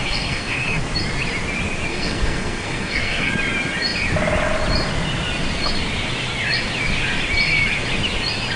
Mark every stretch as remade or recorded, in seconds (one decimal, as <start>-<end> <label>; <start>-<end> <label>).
0.0-0.8 remade; 0.8-1.9 recorded; 1.9-3.3 remade; 3.3-8.6 recorded